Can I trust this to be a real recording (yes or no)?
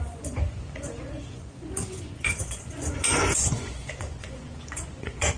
no